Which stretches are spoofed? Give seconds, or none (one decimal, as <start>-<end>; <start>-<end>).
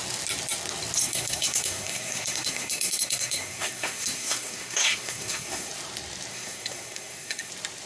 1.0-5.7; 6.3-7.5